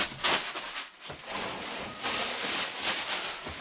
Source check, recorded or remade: recorded